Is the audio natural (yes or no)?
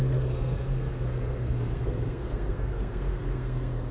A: no